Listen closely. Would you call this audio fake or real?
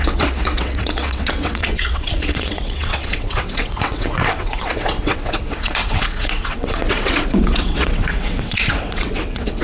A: fake